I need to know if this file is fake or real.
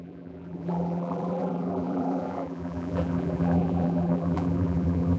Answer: fake